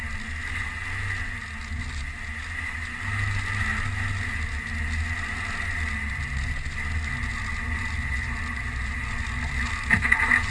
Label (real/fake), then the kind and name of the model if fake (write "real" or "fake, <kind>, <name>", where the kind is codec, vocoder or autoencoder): real